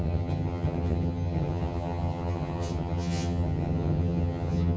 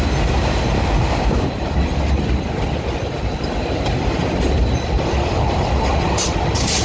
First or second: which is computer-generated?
first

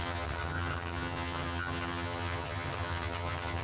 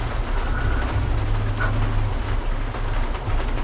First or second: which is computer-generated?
first